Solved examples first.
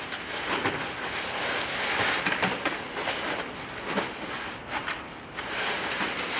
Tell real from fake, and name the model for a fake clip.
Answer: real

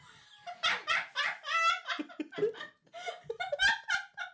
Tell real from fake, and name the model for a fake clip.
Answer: real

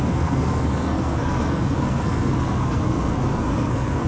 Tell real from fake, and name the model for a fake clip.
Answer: fake, codec, SNAC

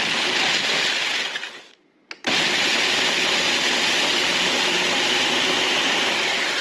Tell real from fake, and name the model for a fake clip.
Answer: real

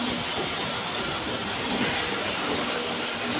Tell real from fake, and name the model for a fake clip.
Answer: real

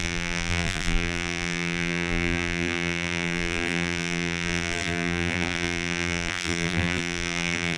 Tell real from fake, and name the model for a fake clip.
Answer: fake, vocoder, BigVGAN v2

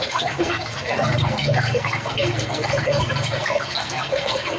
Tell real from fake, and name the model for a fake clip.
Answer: fake, codec, SNAC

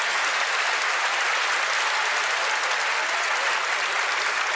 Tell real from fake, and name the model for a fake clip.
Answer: real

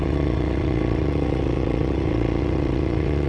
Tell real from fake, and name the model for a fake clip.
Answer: fake, vocoder, WaveNeXt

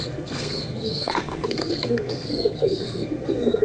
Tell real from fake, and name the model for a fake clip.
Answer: fake, codec, SNAC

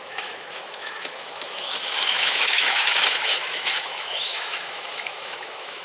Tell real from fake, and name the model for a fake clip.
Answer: fake, autoencoder, DAC-VAE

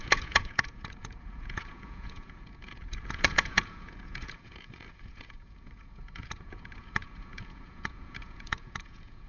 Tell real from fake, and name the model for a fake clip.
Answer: fake, vocoder, Vocos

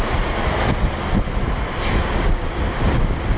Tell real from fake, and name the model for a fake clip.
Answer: real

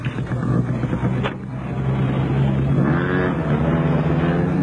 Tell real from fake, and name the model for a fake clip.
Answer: real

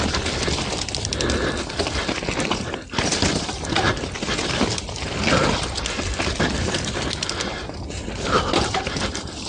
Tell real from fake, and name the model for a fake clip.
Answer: real